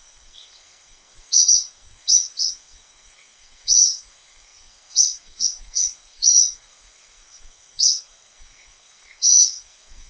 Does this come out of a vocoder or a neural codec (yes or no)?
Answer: yes